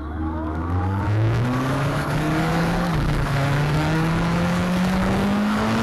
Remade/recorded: remade